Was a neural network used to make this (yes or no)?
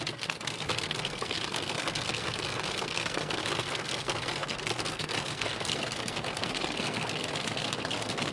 yes